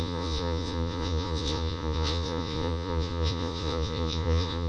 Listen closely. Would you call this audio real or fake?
fake